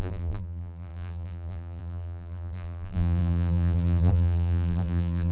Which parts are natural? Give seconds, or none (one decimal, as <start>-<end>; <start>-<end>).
none